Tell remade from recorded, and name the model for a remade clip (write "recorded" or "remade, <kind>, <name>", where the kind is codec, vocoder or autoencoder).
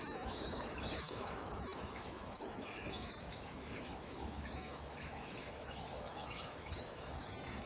remade, autoencoder, DAC-VAE